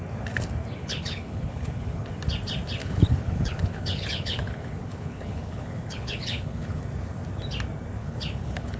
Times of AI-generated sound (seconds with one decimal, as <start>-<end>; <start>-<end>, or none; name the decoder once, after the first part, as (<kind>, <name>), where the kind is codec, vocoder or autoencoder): 0.8-2.1 (codec, HILCodec); 2.8-6.8; 8.0-8.8